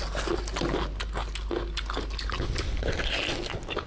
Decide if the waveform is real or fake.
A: real